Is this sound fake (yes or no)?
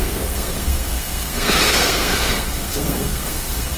yes